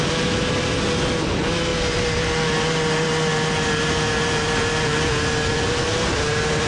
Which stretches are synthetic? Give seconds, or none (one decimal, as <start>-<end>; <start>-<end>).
none